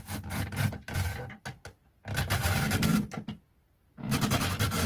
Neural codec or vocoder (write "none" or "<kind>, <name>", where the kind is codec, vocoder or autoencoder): none